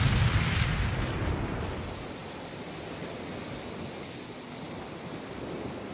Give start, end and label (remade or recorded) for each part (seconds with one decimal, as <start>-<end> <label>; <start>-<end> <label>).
0.0-5.9 recorded